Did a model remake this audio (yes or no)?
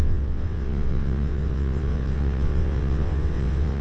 yes